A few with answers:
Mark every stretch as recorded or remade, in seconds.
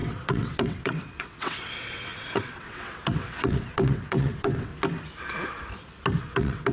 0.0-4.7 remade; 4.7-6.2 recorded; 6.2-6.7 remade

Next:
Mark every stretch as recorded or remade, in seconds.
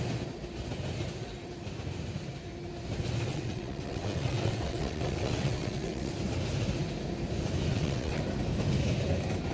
0.0-3.3 recorded; 3.3-6.1 remade; 6.1-7.7 recorded; 7.7-8.2 remade; 8.2-9.5 recorded